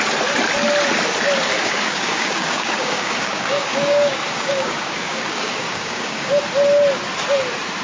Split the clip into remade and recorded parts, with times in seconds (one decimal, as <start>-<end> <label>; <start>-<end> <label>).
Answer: 0.0-1.6 recorded; 1.6-6.3 remade; 6.3-7.8 recorded